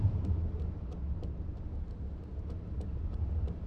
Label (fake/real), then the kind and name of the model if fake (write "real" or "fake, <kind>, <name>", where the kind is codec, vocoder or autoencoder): fake, vocoder, BigVGAN v2